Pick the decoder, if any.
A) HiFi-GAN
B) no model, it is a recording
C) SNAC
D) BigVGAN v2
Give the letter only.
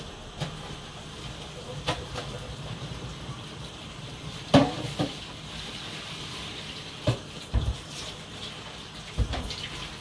D